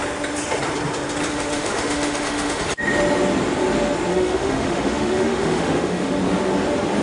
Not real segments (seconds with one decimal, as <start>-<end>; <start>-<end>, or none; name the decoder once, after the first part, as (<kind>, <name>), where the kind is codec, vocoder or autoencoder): 1.3-2.6 (autoencoder, DAC-VAE); 4.1-6.2